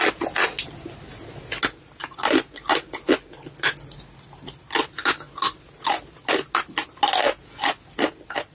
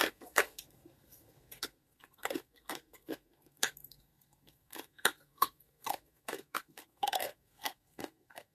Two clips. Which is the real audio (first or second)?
first